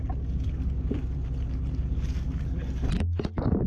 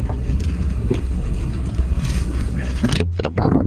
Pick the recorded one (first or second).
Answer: first